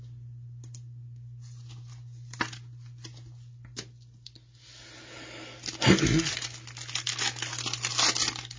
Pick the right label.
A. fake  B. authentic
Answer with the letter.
B